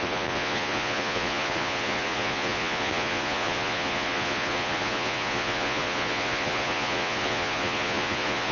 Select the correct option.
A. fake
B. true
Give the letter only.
A